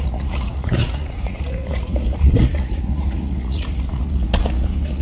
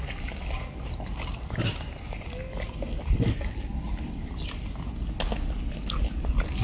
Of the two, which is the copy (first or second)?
first